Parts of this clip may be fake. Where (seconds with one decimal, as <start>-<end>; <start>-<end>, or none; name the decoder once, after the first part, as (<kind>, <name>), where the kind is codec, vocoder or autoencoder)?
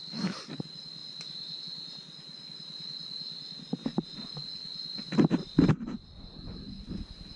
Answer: 0.0-0.6 (codec, DAC)